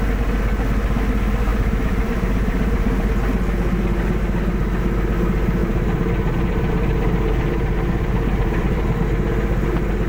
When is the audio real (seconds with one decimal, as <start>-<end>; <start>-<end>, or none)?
0.0-1.5; 3.1-5.6; 9.0-10.1